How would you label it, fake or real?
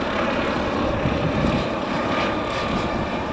fake